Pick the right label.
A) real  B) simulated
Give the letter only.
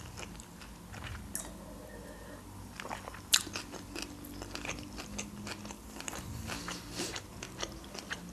A